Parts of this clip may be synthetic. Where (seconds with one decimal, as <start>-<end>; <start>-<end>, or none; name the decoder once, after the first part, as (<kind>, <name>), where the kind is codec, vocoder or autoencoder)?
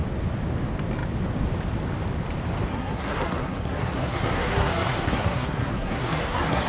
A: 2.7-6.7 (codec, SNAC)